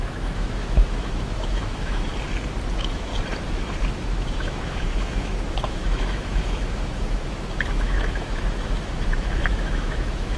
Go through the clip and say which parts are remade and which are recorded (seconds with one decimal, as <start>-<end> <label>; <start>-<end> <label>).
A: 0.0-2.1 remade; 2.1-2.7 recorded; 2.7-3.1 remade; 3.1-3.9 recorded; 3.9-10.4 remade